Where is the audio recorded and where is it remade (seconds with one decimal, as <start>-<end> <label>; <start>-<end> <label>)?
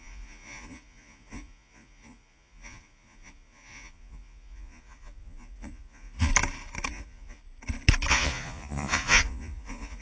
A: 0.0-6.3 remade; 6.3-6.9 recorded; 6.9-7.4 remade; 7.4-8.1 recorded; 8.1-10.0 remade